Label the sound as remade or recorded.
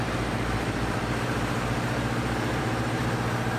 remade